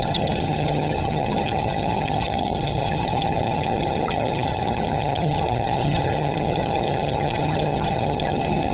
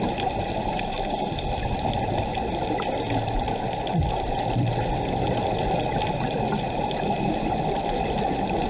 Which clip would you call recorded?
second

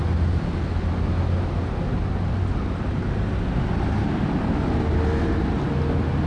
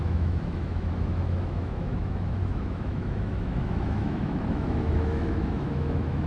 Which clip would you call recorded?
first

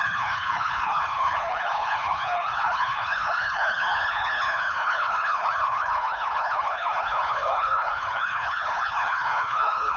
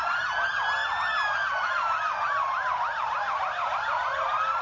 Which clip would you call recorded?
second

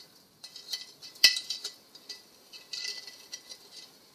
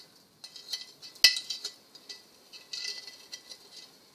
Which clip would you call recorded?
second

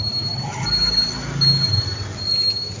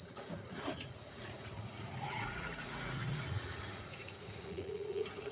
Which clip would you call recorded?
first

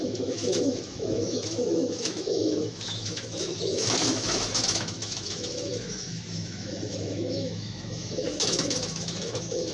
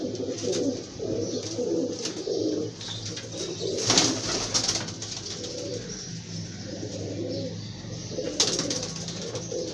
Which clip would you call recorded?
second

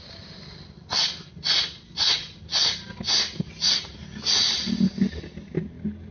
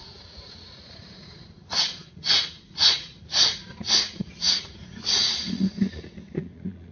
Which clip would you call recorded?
first